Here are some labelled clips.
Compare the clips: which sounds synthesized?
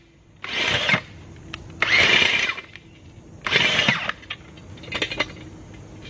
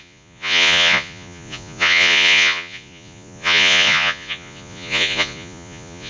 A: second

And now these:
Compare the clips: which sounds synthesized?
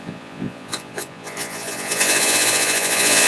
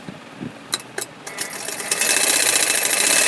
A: first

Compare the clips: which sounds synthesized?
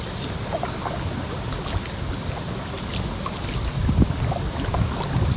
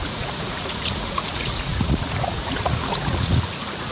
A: second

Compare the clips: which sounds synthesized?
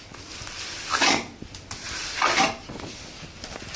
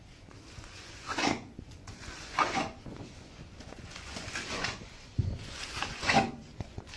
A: second